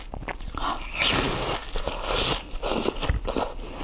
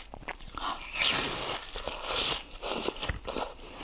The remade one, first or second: second